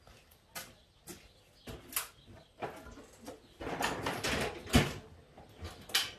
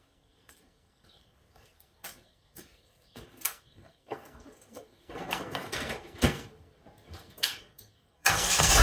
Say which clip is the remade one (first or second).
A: second